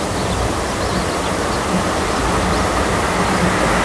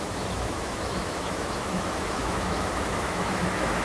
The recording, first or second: first